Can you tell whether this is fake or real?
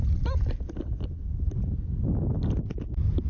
real